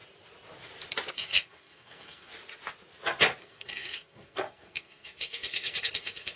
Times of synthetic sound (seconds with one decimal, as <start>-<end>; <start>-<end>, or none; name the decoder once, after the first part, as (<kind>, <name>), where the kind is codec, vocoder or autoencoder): 1.1-2.3 (codec, SNAC); 3.4-6.4